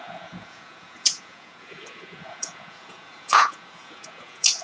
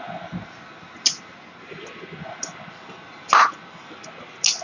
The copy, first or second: first